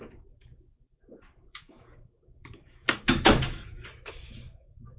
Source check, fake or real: fake